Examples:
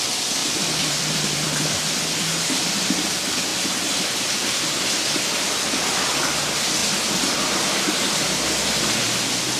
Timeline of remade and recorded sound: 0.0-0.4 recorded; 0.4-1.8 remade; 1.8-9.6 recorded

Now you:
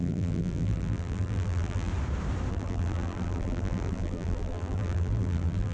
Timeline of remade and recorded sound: 0.0-1.9 remade; 1.9-2.5 recorded; 2.5-5.7 remade